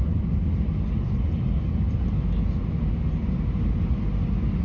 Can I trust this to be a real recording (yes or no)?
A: yes